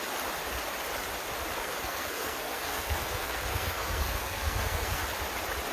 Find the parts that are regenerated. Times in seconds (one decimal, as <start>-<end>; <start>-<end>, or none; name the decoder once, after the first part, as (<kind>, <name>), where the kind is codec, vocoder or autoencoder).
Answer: 1.6-5.0 (codec, SNAC)